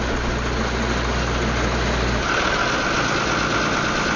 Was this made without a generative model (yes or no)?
yes